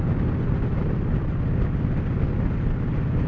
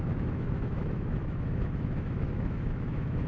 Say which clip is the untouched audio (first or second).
first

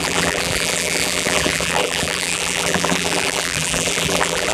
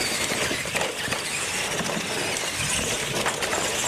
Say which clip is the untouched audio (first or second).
second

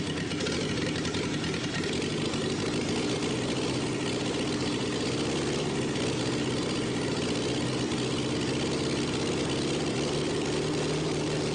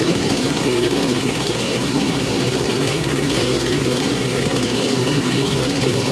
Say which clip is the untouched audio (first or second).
first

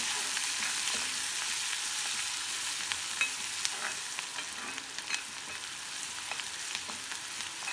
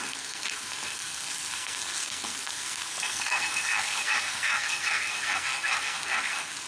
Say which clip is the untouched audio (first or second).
first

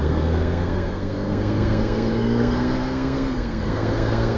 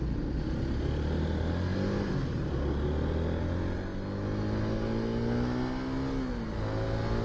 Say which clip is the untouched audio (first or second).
second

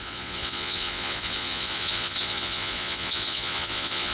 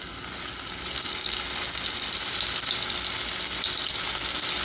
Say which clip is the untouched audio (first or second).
second